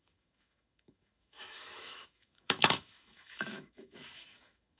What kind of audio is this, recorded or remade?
remade